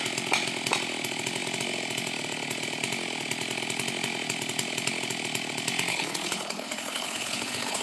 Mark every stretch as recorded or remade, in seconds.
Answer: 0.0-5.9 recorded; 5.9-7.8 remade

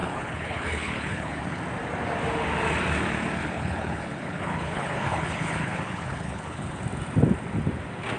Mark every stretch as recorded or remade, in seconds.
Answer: 0.0-1.6 remade; 1.6-3.4 recorded; 3.4-6.8 remade; 6.8-8.2 recorded

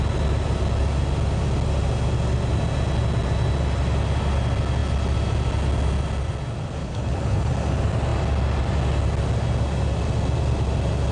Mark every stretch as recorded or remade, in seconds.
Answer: 0.0-6.8 recorded; 6.8-7.5 remade; 7.5-11.1 recorded

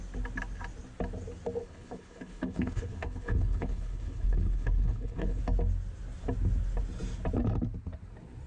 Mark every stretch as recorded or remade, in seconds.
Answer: 0.0-1.6 recorded; 1.6-5.4 remade; 5.4-8.5 recorded